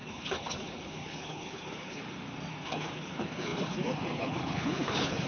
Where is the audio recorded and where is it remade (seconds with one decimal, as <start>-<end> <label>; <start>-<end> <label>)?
0.0-2.0 remade; 2.0-2.5 recorded; 2.5-5.3 remade